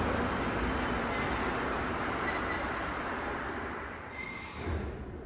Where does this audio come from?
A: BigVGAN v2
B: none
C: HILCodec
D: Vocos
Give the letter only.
B